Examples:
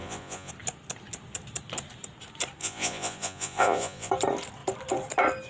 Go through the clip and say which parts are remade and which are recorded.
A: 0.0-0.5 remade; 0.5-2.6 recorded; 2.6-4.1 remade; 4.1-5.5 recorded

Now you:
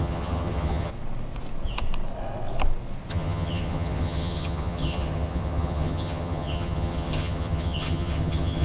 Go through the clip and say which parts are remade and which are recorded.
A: 0.0-0.9 remade; 0.9-3.1 recorded; 3.1-8.6 remade

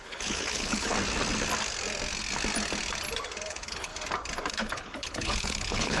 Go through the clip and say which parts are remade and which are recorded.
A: 0.0-0.9 remade; 0.9-3.5 recorded; 3.5-3.9 remade; 3.9-4.5 recorded; 4.5-6.0 remade

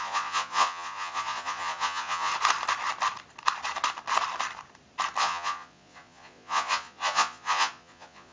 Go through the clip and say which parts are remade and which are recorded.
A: 0.0-2.3 remade; 2.3-5.2 recorded; 5.2-8.3 remade